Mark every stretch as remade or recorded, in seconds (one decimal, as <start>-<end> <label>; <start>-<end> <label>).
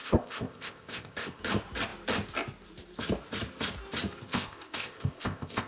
0.0-1.4 remade; 1.4-4.3 recorded; 4.3-5.7 remade